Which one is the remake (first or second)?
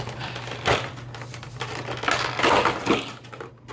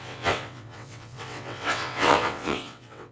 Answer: second